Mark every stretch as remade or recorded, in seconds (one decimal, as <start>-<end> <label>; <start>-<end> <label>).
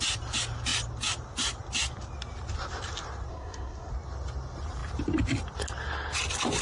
0.0-3.3 recorded; 3.3-3.9 remade; 3.9-6.6 recorded